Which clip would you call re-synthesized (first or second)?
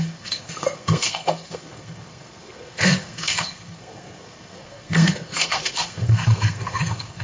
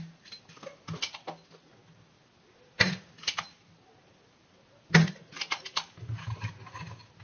first